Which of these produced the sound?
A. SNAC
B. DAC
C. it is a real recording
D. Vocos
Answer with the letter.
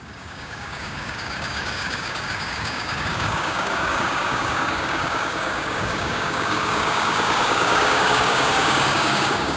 B